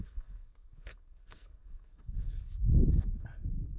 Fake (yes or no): yes